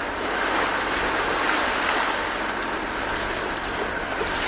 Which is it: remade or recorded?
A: recorded